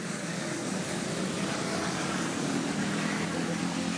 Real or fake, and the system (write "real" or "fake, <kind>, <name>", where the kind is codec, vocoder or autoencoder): fake, codec, DAC